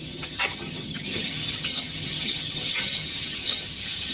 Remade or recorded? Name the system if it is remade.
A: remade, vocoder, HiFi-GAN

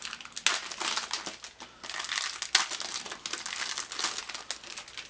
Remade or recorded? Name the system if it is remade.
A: recorded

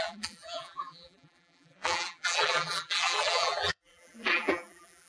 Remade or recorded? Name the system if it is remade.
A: remade, vocoder, BigVGAN v2